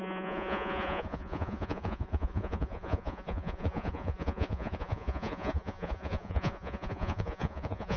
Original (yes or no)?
no